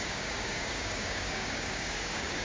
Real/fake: fake